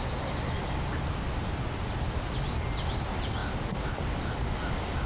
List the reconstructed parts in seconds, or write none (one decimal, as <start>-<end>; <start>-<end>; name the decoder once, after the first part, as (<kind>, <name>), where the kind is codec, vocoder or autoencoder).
none